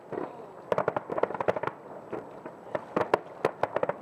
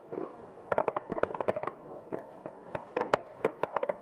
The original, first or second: first